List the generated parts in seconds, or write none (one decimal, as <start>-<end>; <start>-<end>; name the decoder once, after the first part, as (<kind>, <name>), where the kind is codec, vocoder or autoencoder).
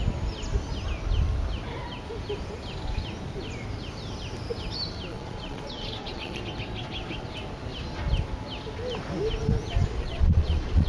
5.1-6.4 (vocoder, Vocos); 9.9-10.9